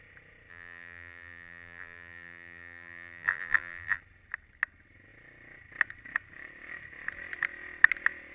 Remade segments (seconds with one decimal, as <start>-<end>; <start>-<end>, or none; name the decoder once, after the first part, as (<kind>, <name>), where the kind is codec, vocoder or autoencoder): 0.5-4.0 (vocoder, BigVGAN v2)